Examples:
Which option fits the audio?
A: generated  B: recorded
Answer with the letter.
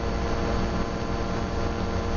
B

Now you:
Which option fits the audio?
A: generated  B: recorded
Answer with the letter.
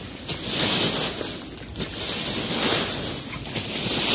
B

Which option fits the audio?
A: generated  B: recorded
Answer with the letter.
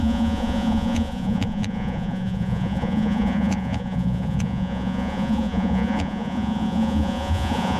A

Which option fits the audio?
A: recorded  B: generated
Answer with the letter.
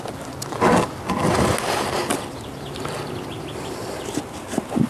A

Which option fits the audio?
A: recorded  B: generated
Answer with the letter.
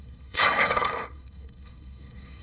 B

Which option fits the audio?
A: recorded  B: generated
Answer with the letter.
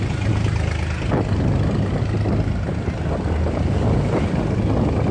A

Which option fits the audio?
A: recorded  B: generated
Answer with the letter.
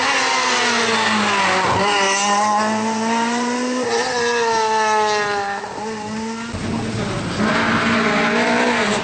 A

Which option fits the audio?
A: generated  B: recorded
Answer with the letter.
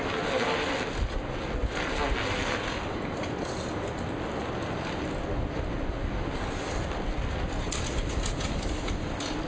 B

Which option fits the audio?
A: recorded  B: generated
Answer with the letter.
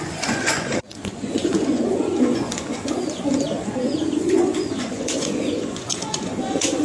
B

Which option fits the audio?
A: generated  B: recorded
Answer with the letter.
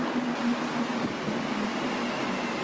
B